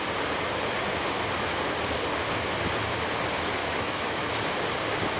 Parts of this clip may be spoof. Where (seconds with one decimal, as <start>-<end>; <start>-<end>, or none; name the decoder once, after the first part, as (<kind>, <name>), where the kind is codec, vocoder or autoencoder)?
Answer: 3.6-4.3 (autoencoder, DAC-VAE)